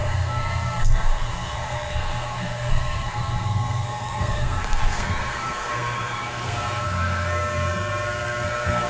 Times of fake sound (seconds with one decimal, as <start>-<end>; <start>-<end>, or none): 0.0-8.9